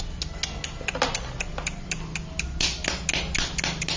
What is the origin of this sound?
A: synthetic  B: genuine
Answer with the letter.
B